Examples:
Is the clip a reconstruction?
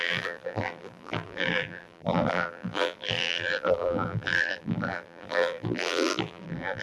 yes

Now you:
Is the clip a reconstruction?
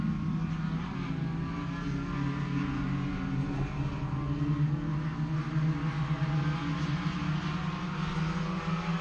no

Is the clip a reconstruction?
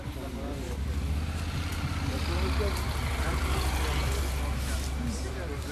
no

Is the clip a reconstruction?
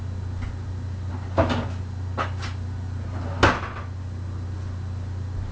no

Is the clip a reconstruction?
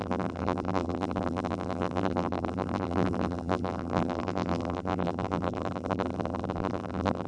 yes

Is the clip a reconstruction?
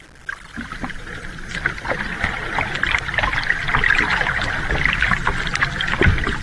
no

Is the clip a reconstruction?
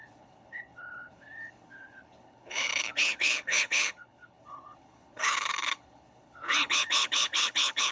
yes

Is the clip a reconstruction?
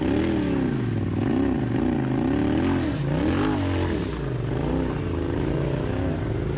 no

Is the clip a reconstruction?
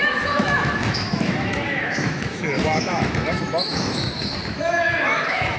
yes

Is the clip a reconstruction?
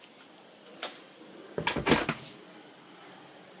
no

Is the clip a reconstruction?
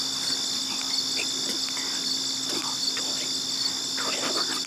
no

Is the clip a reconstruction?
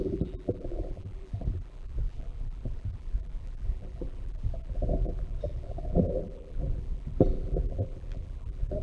yes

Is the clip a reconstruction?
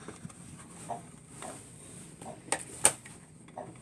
no